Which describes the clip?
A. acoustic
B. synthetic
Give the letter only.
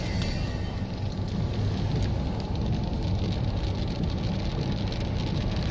A